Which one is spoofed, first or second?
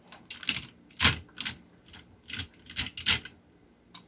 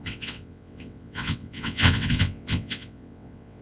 second